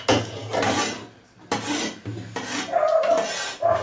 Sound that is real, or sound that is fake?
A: real